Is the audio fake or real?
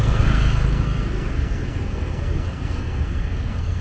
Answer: fake